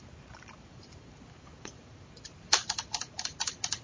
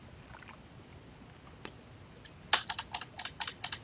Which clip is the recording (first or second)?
second